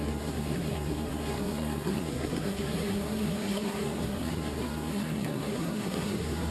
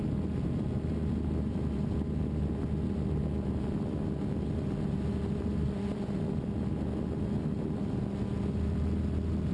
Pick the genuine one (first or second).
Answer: second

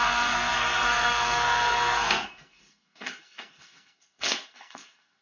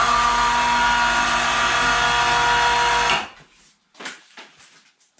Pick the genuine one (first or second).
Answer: second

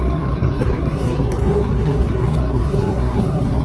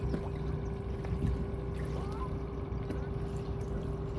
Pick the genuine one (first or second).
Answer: second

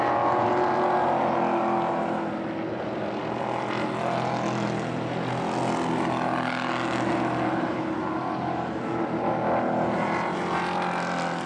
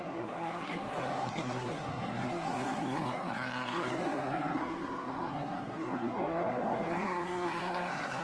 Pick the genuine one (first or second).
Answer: first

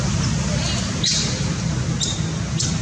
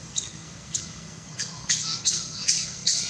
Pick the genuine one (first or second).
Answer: first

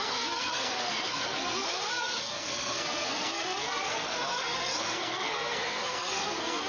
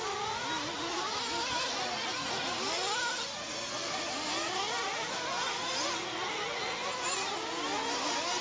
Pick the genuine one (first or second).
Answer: second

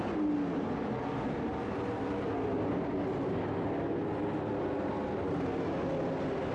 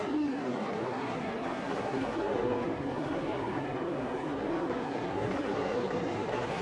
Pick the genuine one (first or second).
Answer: first